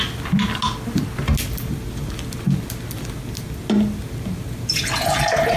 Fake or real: real